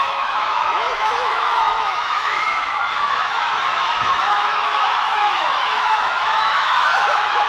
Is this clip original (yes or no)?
no